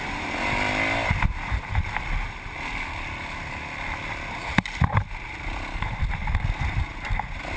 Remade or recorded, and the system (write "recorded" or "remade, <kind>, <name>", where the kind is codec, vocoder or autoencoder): recorded